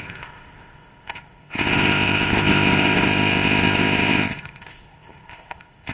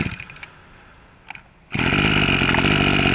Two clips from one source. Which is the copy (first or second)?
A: first